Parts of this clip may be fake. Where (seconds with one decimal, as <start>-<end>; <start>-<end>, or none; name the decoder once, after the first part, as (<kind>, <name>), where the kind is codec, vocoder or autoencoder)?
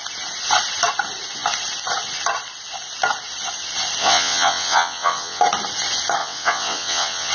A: 4.0-5.4 (vocoder, WaveNeXt); 6.2-7.3